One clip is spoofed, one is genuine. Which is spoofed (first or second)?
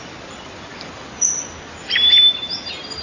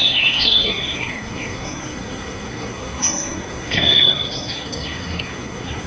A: second